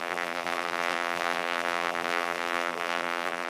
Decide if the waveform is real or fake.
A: fake